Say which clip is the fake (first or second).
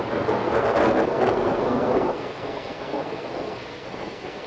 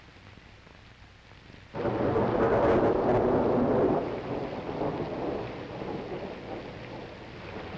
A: first